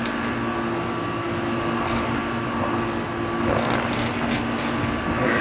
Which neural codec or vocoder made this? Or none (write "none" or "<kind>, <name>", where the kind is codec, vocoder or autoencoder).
none